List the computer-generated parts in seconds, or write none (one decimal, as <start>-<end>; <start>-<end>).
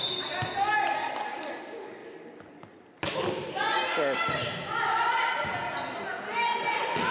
6.1-7.1